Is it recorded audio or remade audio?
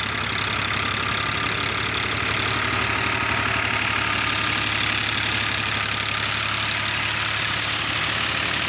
recorded